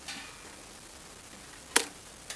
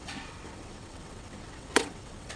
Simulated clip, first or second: second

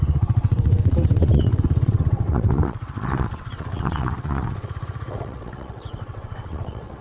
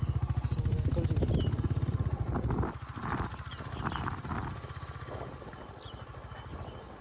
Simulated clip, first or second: first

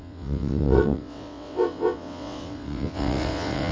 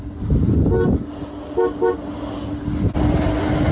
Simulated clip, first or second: first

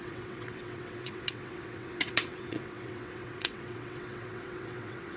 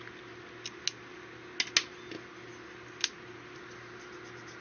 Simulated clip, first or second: first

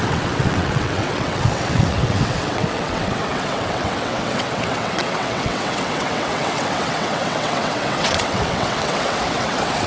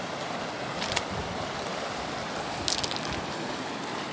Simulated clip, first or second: first